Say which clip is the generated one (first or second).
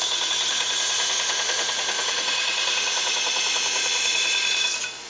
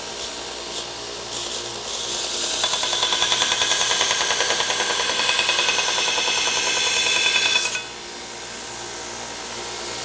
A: first